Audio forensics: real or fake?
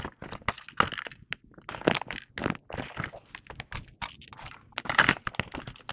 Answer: real